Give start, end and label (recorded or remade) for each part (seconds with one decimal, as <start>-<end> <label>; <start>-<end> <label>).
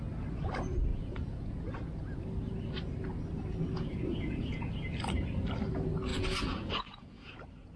0.0-0.9 recorded; 0.9-2.2 remade; 2.2-3.5 recorded; 3.5-4.6 remade; 4.6-6.1 recorded; 6.1-7.3 remade; 7.3-7.8 recorded